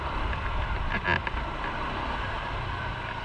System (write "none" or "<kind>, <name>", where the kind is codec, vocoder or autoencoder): none